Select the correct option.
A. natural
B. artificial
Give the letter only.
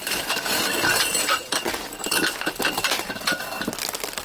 A